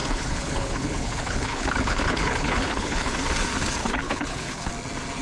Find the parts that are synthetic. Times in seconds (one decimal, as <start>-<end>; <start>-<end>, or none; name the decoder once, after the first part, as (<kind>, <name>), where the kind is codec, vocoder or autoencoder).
0.0-3.1 (codec, HILCodec); 3.8-4.7